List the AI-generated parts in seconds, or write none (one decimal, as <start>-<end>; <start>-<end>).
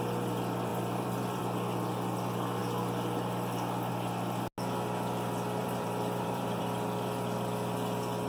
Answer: 0.7-1.4; 5.6-6.6